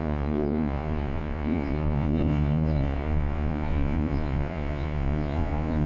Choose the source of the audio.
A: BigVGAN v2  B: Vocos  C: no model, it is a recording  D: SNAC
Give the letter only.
B